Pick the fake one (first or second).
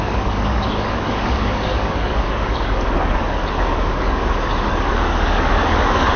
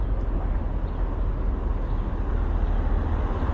first